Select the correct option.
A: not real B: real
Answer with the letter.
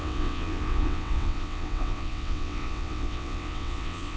A